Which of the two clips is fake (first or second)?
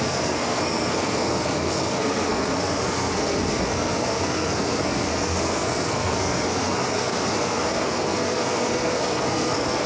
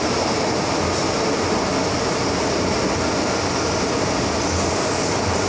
first